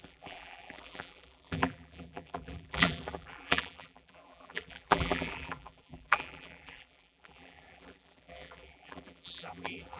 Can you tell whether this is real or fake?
fake